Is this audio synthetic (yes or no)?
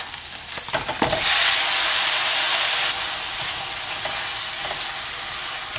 no